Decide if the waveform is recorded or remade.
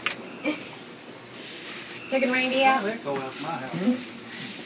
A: recorded